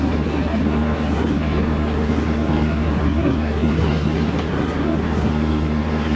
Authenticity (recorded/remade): remade